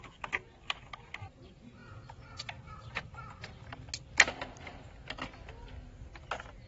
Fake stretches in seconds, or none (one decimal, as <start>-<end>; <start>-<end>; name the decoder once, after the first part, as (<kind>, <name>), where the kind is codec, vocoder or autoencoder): none